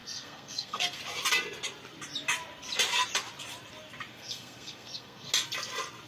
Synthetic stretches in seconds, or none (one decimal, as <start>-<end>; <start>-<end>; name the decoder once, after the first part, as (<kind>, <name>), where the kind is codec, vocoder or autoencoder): 0.0-1.0 (codec, SNAC); 4.1-5.3